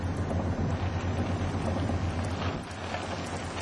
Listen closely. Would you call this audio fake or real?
real